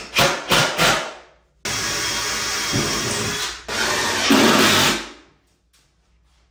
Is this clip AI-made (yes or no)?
no